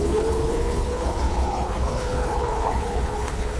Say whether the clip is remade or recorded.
remade